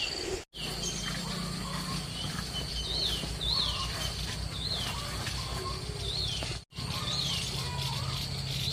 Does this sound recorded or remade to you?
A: recorded